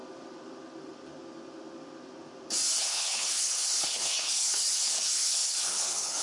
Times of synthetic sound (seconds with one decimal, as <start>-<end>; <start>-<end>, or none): 2.8-6.2